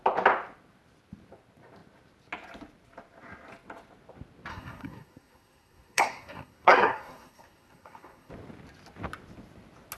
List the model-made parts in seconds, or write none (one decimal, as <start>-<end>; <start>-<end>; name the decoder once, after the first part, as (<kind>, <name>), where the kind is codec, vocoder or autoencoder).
4.5-8.3 (codec, SNAC)